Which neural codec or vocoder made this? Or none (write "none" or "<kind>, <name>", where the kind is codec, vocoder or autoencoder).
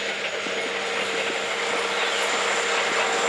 none